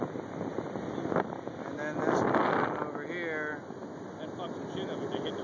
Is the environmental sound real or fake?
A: real